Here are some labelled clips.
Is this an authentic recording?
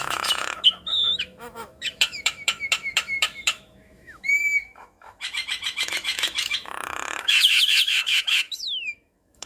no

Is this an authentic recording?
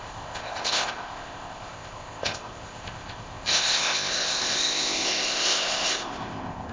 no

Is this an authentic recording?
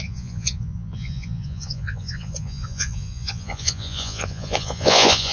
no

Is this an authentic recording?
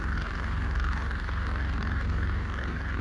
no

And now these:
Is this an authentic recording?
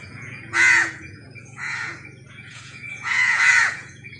no